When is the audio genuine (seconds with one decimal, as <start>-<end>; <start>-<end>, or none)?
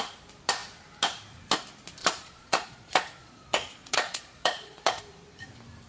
0.0-2.0; 5.0-5.9